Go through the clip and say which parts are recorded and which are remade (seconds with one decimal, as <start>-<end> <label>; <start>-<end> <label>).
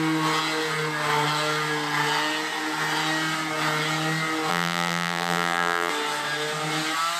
0.0-4.5 recorded; 4.5-5.9 remade; 5.9-7.2 recorded